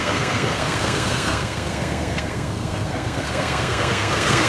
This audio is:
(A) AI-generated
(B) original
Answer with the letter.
A